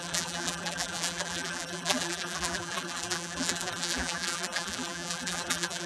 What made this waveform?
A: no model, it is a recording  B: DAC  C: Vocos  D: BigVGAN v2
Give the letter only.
D